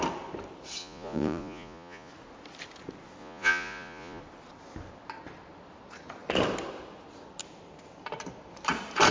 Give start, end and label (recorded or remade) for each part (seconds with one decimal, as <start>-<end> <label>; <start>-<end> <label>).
0.0-0.8 recorded; 0.8-2.1 remade; 2.1-3.2 recorded; 3.2-4.2 remade; 4.2-9.1 recorded